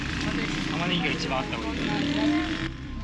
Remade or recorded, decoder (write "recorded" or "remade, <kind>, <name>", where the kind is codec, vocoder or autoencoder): remade, vocoder, BigVGAN v2